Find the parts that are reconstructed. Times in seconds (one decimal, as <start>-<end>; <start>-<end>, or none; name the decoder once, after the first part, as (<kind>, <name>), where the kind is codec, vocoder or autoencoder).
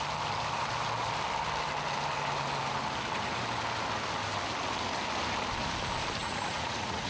6.2-7.1 (vocoder, Vocos)